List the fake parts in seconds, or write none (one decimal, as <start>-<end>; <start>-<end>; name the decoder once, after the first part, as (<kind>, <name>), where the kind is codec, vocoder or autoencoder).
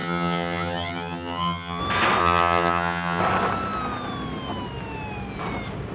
0.0-1.8 (vocoder, HiFi-GAN); 2.2-3.2